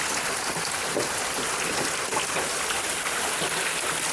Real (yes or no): yes